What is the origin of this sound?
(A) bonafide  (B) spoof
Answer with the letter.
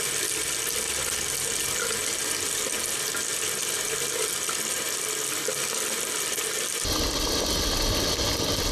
A